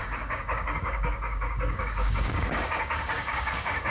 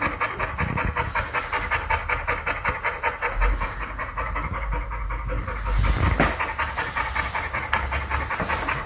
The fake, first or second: first